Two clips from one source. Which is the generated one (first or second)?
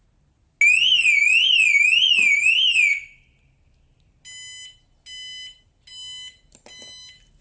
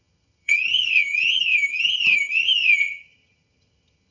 second